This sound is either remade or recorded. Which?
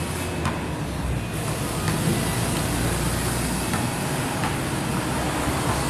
recorded